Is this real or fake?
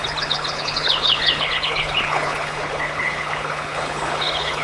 fake